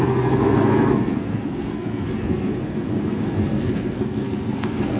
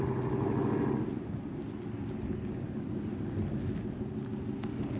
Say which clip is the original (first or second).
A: second